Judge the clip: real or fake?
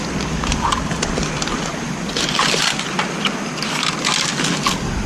real